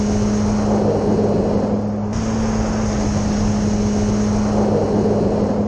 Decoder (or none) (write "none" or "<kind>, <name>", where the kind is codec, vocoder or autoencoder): none